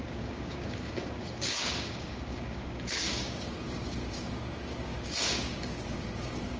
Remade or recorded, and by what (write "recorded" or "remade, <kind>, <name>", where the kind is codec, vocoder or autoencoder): remade, codec, DAC